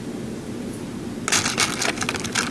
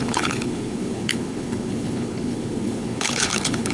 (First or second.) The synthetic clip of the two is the second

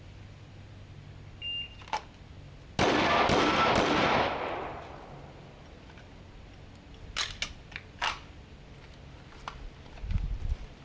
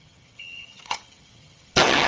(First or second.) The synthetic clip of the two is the second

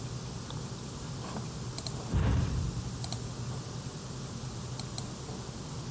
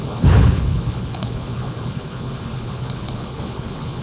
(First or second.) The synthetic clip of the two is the second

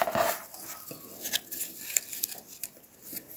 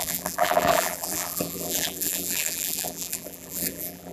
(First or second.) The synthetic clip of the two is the second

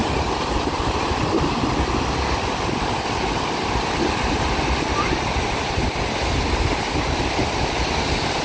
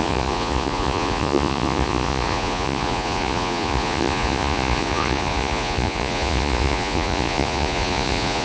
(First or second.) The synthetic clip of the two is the second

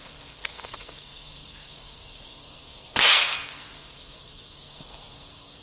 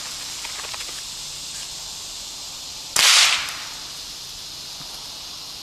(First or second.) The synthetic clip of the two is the first